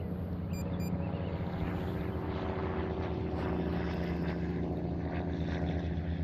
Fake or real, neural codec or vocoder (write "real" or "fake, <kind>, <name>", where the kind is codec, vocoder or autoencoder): real